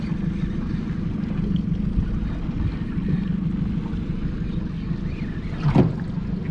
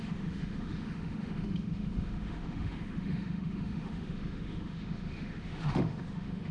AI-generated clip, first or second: second